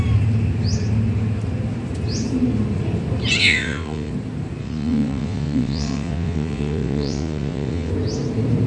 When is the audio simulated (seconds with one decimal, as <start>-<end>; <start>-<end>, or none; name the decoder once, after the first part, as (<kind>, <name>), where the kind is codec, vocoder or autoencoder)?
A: 3.4-4.1 (vocoder, WaveNeXt); 4.6-7.9